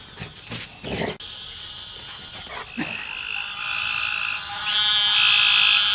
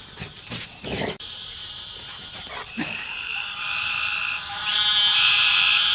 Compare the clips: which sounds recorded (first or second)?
first